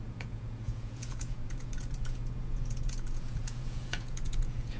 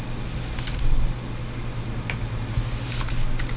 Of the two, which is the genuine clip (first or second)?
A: second